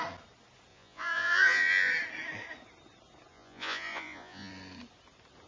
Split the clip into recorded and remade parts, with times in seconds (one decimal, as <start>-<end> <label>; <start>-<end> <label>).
0.0-0.7 recorded; 0.7-1.9 remade; 1.9-3.3 recorded; 3.3-4.5 remade; 4.5-5.5 recorded